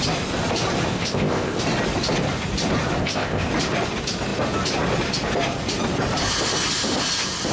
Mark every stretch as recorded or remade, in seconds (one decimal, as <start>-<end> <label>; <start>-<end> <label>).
0.0-0.9 recorded; 0.9-1.6 remade; 1.6-3.0 recorded; 3.0-3.5 remade; 3.5-7.5 recorded